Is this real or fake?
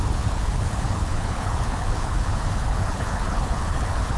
fake